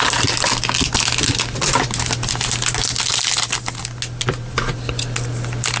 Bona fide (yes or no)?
yes